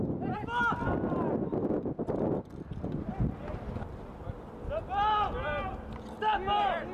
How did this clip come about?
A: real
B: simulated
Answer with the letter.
A